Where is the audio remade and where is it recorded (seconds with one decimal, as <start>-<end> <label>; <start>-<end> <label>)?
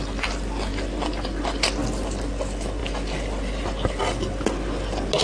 0.0-5.2 recorded